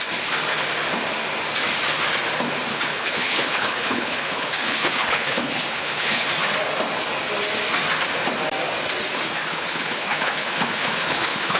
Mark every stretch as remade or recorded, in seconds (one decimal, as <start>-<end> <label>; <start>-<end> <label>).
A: 0.0-2.7 recorded; 2.7-6.3 remade; 6.3-9.5 recorded; 9.5-11.6 remade